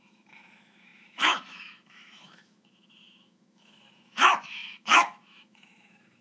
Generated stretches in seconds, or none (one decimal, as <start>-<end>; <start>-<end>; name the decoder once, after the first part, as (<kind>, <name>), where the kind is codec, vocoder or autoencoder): 0.0-6.2 (autoencoder, DAC-VAE)